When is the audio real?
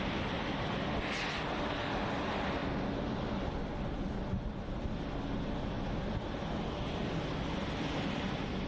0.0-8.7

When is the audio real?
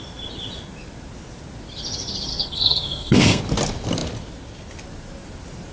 0.0-2.3; 3.4-5.7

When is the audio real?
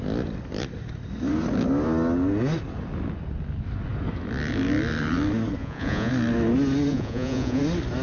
0.0-5.6; 6.1-6.9; 7.6-8.0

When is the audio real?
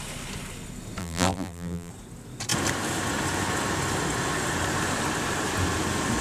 0.0-1.0; 1.9-6.2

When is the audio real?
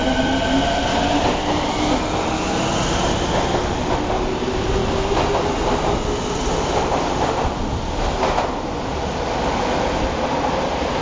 0.0-11.0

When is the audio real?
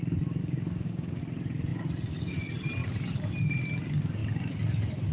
0.0-0.4; 1.2-5.1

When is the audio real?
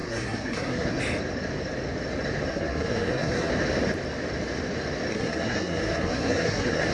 1.0-2.5; 3.5-5.1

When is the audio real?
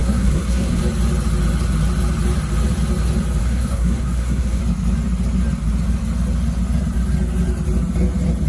0.8-3.4; 4.6-8.5